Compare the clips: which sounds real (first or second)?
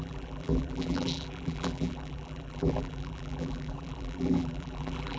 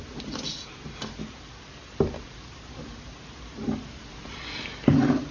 second